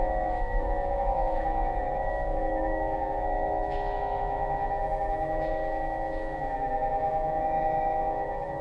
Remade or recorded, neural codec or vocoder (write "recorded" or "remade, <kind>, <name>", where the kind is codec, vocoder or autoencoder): remade, autoencoder, DAC-VAE